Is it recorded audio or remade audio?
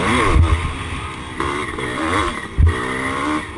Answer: recorded